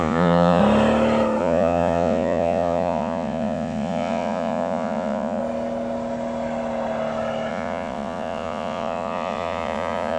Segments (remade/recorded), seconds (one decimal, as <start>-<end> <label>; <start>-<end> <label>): 0.0-0.6 remade; 0.6-1.4 recorded; 1.4-5.4 remade; 5.4-7.5 recorded; 7.5-10.2 remade